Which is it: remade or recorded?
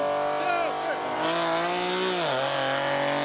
recorded